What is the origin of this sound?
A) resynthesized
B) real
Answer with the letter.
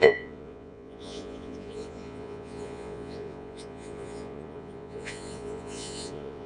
A